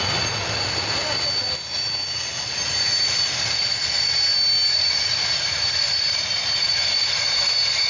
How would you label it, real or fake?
real